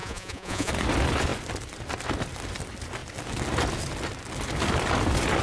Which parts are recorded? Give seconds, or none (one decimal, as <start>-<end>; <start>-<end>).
0.7-5.4